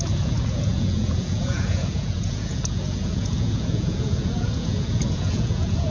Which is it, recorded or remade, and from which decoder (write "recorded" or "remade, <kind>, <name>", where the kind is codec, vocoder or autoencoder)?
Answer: remade, vocoder, Vocos